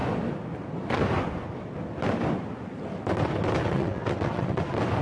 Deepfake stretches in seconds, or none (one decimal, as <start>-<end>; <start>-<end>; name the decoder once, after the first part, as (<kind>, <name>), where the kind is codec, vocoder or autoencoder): 3.6-4.6 (vocoder, WaveNeXt)